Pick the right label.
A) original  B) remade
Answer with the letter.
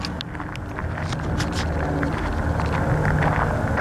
A